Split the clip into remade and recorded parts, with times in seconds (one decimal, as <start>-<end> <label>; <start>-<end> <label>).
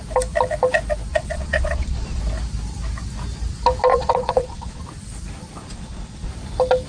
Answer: 0.0-1.1 recorded; 1.1-2.2 remade; 2.2-3.9 recorded; 3.9-4.8 remade; 4.8-5.6 recorded; 5.6-6.3 remade; 6.3-6.9 recorded